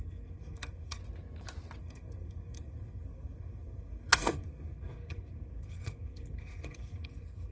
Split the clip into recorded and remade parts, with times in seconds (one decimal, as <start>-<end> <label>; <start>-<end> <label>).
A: 0.0-1.0 remade; 1.0-1.8 recorded; 1.8-7.5 remade